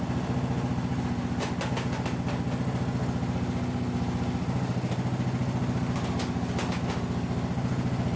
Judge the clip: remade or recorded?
recorded